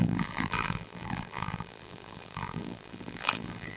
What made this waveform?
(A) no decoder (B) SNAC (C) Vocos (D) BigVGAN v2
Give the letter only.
D